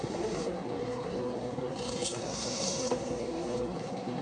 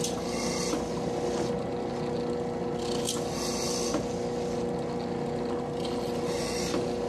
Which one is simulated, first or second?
first